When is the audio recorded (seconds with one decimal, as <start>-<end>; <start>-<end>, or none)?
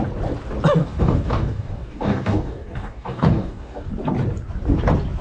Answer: 0.0-0.8; 3.9-5.2